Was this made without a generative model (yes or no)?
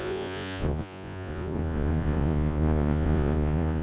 no